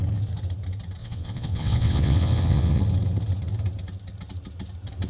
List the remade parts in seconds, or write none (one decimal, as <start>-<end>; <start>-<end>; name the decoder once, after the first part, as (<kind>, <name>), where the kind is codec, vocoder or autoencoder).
1.0-2.8 (vocoder, WaveNeXt)